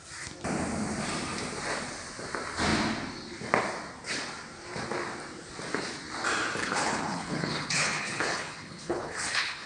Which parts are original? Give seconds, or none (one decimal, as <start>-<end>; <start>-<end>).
0.0-6.6